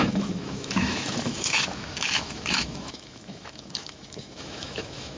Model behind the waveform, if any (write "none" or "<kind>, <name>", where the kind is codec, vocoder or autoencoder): autoencoder, DAC-VAE